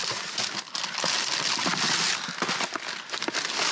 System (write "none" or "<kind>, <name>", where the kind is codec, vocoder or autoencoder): none